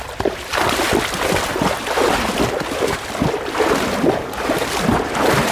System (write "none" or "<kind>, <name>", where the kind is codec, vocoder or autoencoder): none